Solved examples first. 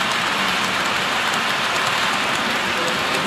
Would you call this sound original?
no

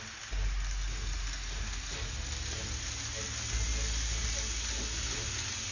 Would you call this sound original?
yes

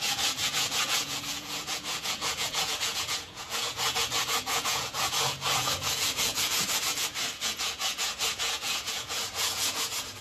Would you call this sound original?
no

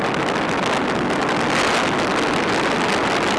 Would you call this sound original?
yes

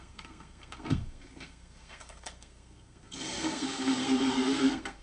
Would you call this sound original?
no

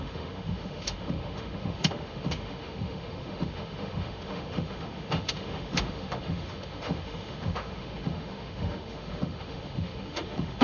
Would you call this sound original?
no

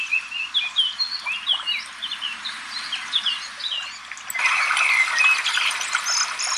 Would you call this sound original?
yes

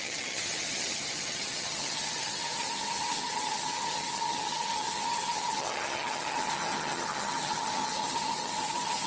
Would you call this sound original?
no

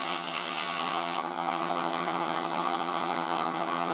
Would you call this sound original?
no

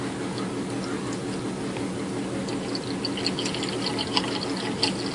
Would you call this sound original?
yes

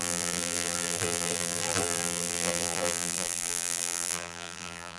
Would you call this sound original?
no